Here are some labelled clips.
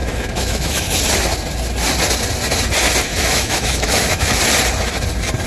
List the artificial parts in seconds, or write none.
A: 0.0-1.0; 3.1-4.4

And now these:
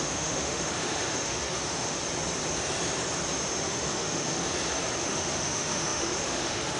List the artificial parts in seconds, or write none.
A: 0.0-2.0; 3.6-4.4; 5.0-6.8

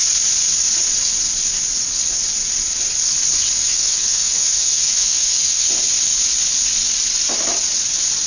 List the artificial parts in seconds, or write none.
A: 3.6-5.7